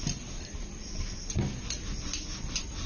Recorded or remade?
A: recorded